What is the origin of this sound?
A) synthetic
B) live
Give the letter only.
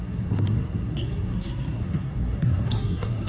A